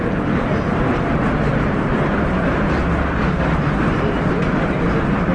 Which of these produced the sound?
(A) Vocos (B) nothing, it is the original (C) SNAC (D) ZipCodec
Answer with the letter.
B